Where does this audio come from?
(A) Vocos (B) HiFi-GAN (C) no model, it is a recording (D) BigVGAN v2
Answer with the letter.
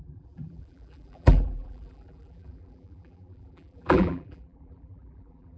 D